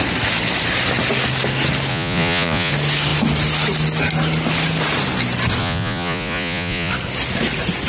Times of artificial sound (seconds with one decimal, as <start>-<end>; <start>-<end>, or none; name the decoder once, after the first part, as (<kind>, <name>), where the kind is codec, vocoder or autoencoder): 1.9-2.7 (vocoder, Vocos); 5.6-6.9